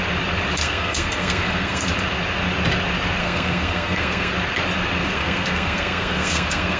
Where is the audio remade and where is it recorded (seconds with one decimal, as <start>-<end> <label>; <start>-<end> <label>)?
0.0-0.6 recorded; 0.6-1.9 remade; 1.9-3.2 recorded; 3.2-4.3 remade; 4.3-5.0 recorded; 5.0-6.8 remade